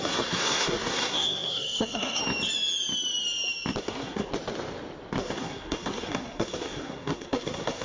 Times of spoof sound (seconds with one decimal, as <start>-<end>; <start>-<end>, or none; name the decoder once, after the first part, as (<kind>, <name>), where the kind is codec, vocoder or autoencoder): 0.0-2.2 (codec, SNAC); 3.8-4.3; 5.2-7.8